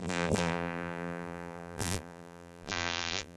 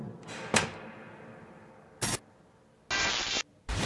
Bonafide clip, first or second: second